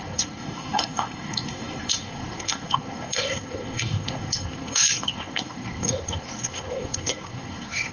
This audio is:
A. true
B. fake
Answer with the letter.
B